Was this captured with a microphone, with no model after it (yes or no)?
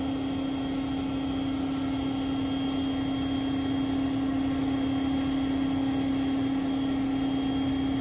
yes